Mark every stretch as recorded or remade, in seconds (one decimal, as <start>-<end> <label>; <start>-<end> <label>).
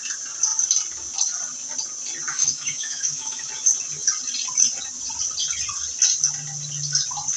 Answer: 0.0-2.3 recorded; 2.3-3.5 remade; 3.5-7.4 recorded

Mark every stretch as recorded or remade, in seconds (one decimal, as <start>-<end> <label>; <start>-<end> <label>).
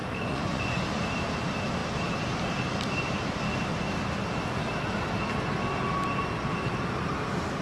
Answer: 0.0-1.0 remade; 1.0-7.6 recorded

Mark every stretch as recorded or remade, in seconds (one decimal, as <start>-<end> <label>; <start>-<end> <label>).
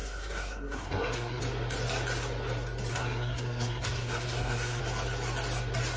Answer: 0.0-1.4 remade; 1.4-2.9 recorded; 2.9-4.8 remade; 4.8-6.0 recorded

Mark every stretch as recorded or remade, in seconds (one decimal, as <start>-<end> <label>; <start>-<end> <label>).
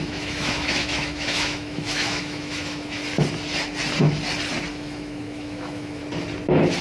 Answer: 0.0-3.0 remade; 3.0-4.7 recorded; 4.7-6.0 remade; 6.0-6.8 recorded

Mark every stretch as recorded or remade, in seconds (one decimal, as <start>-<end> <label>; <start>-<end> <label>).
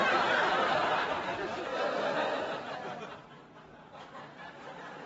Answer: 0.0-1.5 recorded; 1.5-4.6 remade; 4.6-5.1 recorded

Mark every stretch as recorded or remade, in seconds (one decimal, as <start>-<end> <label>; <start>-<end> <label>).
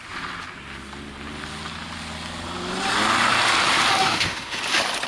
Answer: 0.0-4.0 recorded; 4.0-4.6 remade; 4.6-5.1 recorded